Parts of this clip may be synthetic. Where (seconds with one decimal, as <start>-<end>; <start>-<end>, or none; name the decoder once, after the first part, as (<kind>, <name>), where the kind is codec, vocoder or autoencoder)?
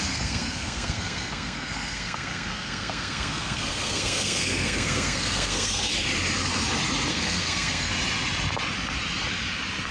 0.0-5.9 (codec, SNAC); 7.1-7.9